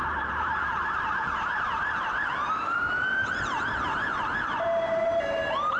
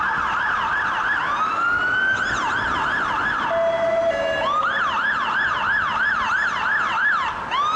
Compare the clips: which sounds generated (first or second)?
first